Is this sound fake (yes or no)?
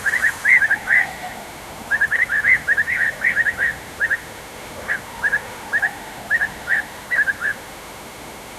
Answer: yes